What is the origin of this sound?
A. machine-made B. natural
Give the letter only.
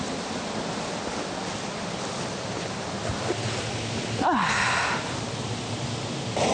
B